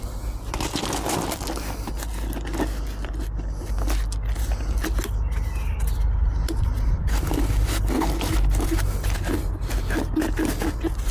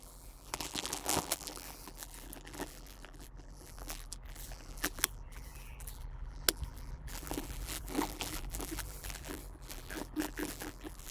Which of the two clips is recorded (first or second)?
first